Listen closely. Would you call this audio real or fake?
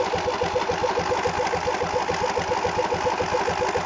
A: real